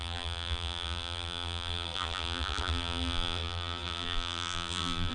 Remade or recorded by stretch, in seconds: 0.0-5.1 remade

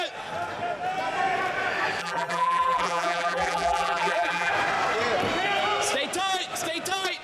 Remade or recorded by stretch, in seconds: 0.0-2.0 recorded; 2.0-4.5 remade; 4.5-7.2 recorded

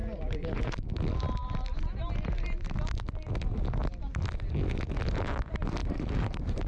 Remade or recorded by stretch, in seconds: 0.0-0.9 remade; 0.9-5.8 recorded; 5.8-6.7 remade

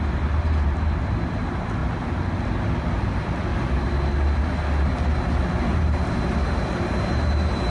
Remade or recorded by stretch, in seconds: 0.0-5.7 recorded; 5.7-7.7 remade

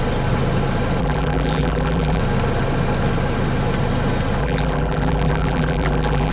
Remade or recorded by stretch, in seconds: 0.0-1.0 recorded; 1.0-2.2 remade; 2.2-4.4 recorded; 4.4-6.3 remade

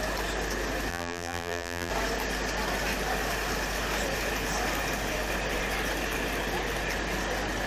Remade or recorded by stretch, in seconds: 0.0-0.9 recorded; 0.9-1.9 remade; 1.9-7.7 recorded

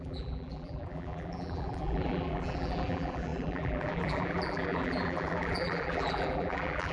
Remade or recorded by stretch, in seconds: 0.0-6.9 remade

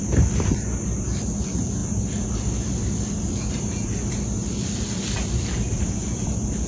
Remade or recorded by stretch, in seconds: 0.0-1.8 remade; 1.8-5.8 recorded; 5.8-6.7 remade